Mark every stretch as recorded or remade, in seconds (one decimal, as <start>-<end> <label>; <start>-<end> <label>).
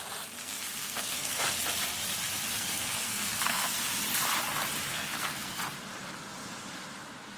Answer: 0.0-0.4 recorded; 0.4-1.6 remade; 1.6-2.5 recorded; 2.5-3.9 remade; 3.9-4.9 recorded; 4.9-5.7 remade; 5.7-7.4 recorded